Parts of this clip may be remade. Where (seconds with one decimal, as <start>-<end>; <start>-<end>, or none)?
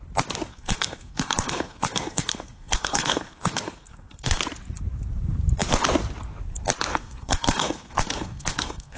0.5-4.4; 6.9-9.0